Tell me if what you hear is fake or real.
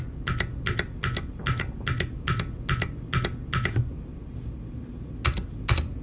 real